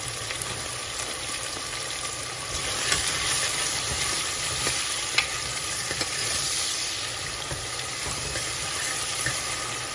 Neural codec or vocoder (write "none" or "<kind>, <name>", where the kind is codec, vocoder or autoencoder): vocoder, BigVGAN v2